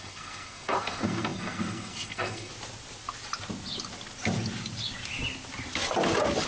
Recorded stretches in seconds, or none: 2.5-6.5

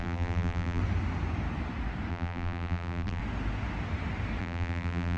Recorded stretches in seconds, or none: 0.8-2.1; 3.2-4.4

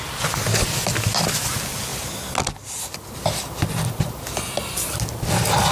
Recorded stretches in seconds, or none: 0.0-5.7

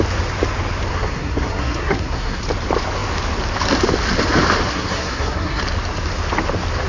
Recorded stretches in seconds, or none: 0.0-0.9; 2.4-4.7; 5.6-6.9